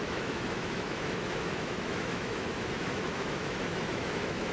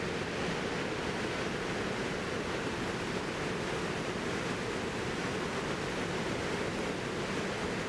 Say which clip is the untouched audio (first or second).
second